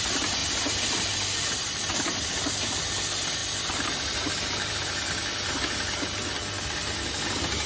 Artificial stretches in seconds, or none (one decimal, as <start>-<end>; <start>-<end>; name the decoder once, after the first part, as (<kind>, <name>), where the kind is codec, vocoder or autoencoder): 0.4-2.8 (vocoder, BigVGAN v2); 3.4-5.5